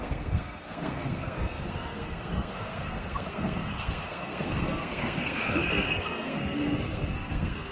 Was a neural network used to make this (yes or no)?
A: yes